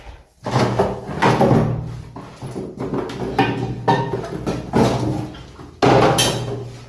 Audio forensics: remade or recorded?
recorded